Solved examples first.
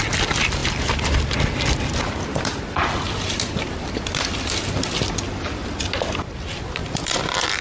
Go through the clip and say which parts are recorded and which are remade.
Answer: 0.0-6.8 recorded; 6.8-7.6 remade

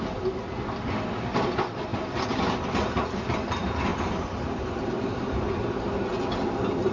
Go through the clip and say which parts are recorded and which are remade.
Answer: 0.0-3.9 recorded; 3.9-5.6 remade; 5.6-6.9 recorded

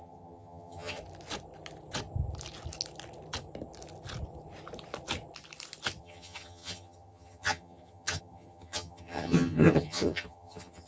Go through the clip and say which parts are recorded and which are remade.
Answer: 0.0-1.0 remade; 1.0-6.0 recorded; 6.0-10.9 remade

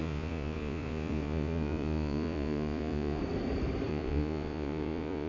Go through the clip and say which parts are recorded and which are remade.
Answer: 0.0-3.2 remade; 3.2-3.9 recorded; 3.9-5.3 remade

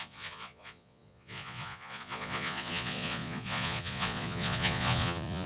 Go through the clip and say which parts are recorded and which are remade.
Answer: 0.0-5.5 remade

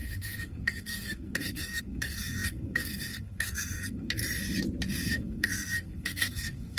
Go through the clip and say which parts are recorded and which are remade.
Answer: 0.0-4.2 remade; 4.2-5.0 recorded; 5.0-6.8 remade

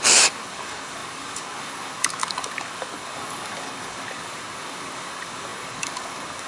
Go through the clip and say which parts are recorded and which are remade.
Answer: 0.0-6.5 remade

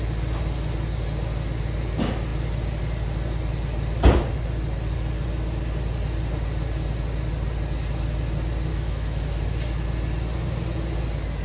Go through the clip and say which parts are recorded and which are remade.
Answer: 0.0-8.7 recorded; 8.7-9.4 remade; 9.4-11.4 recorded